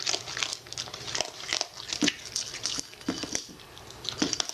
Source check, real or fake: real